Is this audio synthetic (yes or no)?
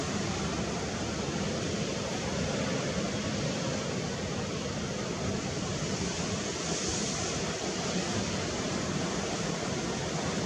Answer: yes